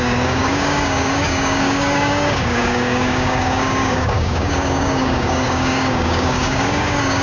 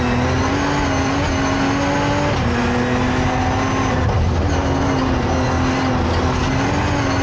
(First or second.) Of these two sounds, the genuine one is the second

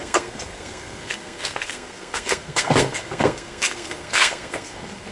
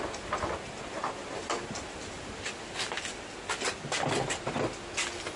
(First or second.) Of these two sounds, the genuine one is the second